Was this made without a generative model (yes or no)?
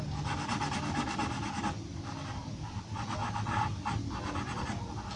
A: yes